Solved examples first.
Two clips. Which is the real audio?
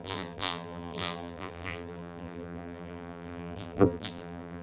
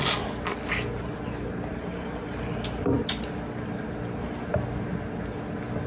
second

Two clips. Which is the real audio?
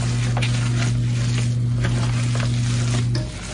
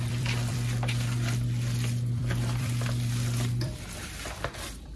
first